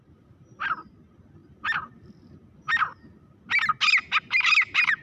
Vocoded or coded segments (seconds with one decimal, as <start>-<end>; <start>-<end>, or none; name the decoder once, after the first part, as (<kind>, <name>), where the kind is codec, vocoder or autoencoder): none